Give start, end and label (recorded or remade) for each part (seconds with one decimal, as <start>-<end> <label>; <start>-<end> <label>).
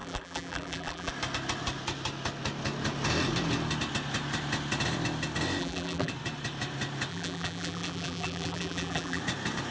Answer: 0.0-1.1 remade; 1.1-5.6 recorded; 5.6-6.1 remade; 6.1-7.1 recorded; 7.1-9.2 remade; 9.2-9.7 recorded